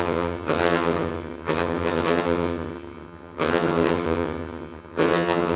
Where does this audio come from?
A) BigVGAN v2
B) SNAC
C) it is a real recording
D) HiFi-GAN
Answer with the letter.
D